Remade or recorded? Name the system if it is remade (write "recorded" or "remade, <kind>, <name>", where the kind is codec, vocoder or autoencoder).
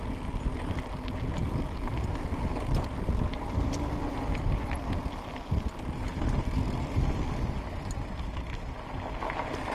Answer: recorded